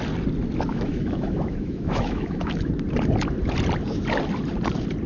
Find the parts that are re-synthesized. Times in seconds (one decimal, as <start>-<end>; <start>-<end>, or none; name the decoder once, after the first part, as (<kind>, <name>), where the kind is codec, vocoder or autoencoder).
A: 0.7-2.7 (autoencoder, DAC-VAE)